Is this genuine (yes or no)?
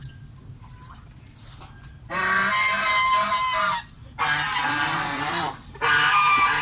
yes